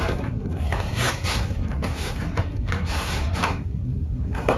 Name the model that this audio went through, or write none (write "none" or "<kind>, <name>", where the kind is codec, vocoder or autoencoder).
codec, SNAC